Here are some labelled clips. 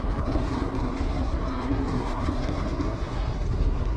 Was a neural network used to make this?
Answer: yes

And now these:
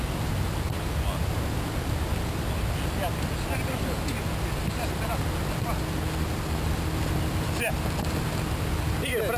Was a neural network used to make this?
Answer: no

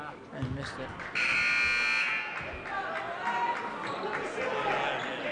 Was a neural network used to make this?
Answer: no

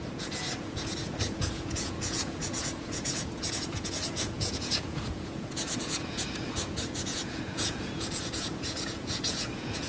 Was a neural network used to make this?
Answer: yes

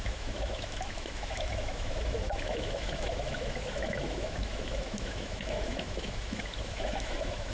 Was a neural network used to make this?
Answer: yes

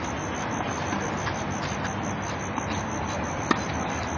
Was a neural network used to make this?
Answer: no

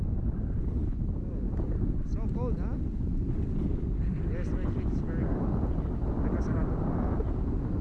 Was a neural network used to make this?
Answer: no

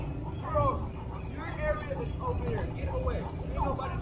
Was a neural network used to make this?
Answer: no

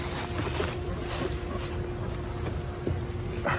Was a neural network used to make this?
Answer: no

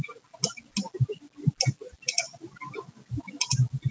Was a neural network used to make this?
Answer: no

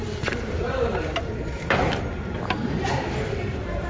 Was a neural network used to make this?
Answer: yes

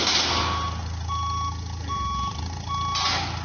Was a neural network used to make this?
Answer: no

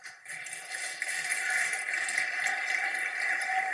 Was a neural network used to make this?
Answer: no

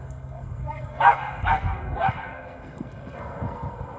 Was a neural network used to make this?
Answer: yes